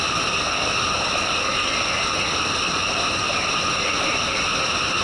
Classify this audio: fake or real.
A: real